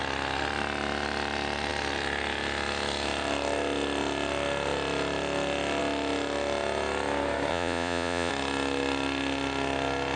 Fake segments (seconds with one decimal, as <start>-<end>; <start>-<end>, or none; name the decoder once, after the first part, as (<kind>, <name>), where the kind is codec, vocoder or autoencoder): 7.5-8.3 (vocoder, Vocos)